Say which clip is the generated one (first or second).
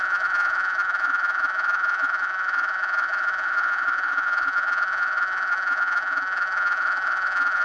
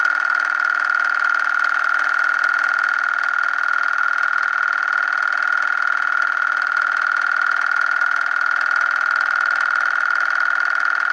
first